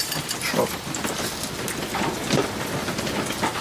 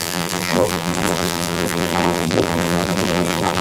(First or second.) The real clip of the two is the first